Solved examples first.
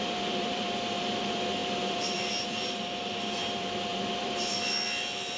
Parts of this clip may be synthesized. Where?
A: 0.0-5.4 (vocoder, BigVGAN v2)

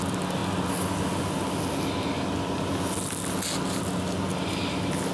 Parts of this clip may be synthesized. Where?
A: none

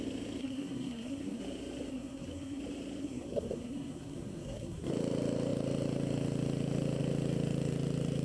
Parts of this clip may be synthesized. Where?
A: 0.4-1.4 (codec, SNAC); 1.9-2.6; 3.0-4.9

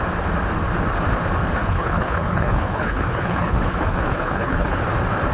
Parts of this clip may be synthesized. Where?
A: 1.6-4.8 (codec, HILCodec)